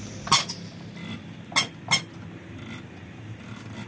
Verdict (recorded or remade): recorded